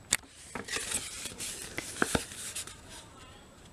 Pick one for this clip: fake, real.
fake